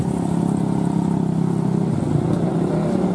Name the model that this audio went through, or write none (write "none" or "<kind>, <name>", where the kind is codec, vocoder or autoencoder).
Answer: none